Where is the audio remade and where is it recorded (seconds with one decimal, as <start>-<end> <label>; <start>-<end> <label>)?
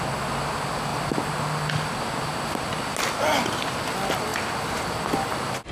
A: 0.0-5.7 recorded